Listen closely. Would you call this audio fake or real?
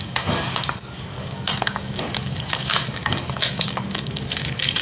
fake